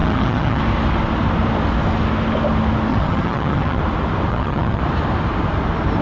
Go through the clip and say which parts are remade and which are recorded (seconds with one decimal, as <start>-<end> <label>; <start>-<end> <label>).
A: 0.0-0.6 remade; 0.6-2.9 recorded; 2.9-3.8 remade; 3.8-4.3 recorded; 4.3-4.8 remade; 4.8-6.0 recorded